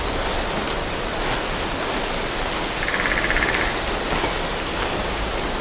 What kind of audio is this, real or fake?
real